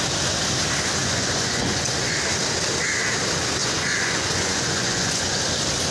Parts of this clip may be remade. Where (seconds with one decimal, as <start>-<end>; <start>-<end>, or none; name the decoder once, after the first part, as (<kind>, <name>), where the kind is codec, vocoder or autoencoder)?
1.0-2.2 (vocoder, Vocos); 3.6-5.4